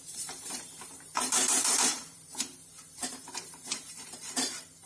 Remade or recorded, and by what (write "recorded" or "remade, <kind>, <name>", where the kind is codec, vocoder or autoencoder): remade, vocoder, BigVGAN v2